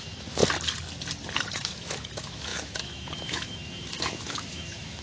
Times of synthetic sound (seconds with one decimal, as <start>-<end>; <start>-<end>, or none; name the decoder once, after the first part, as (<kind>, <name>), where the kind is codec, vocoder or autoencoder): 0.0-0.4 (autoencoder, DAC-VAE); 1.5-5.0